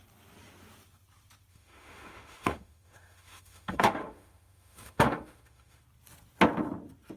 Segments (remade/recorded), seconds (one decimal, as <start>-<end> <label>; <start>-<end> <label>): 0.0-1.5 recorded; 1.5-5.8 remade; 5.8-7.2 recorded